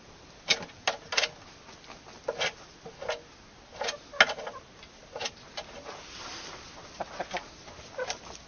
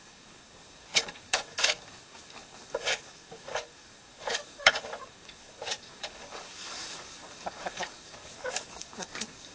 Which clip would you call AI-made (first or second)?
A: second